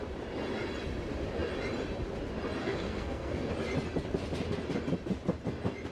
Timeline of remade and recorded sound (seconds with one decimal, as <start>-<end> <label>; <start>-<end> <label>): 0.0-2.6 recorded; 2.6-3.5 remade; 3.5-5.9 recorded